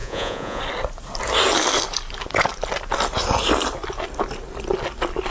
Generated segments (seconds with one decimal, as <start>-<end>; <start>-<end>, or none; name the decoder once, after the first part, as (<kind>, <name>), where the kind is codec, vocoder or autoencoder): 0.0-0.6 (vocoder, Vocos)